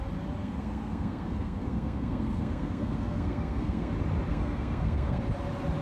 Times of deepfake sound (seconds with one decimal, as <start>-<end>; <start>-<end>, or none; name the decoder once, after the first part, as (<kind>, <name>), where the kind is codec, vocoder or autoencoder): 0.4-3.9 (codec, SNAC); 4.3-5.2